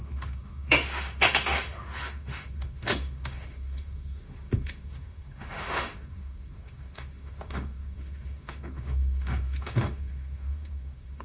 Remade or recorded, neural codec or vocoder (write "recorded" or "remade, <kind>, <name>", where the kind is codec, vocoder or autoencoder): remade, autoencoder, DAC-VAE